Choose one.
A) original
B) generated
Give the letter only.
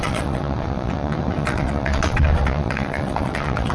B